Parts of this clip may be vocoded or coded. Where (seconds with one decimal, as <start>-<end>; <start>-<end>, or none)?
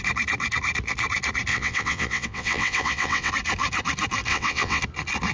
1.5-3.3; 4.3-4.8